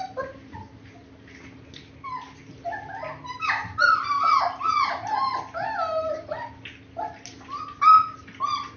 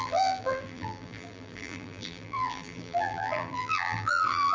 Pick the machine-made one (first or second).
second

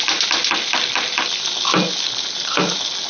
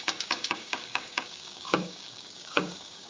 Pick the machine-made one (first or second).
second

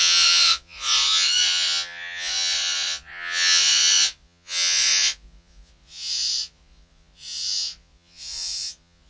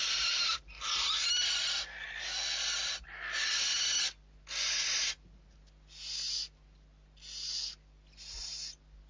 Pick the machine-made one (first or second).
first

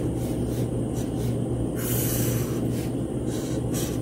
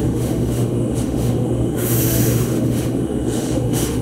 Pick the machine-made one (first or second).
second